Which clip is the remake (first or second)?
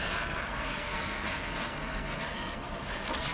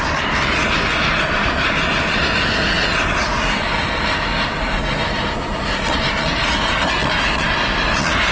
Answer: first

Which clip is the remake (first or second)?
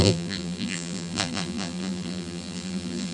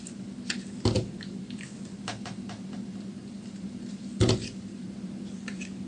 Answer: first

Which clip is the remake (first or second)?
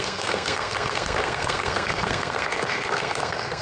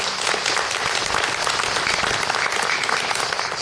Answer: first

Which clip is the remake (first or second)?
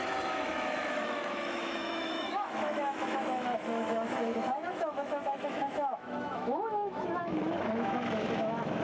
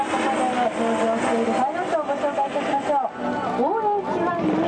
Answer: first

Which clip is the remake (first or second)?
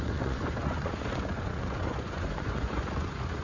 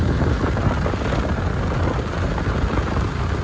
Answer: first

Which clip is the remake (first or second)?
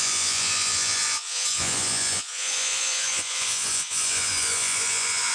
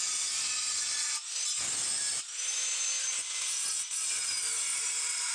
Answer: first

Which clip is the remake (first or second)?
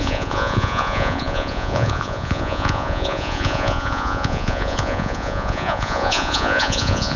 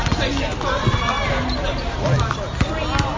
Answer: first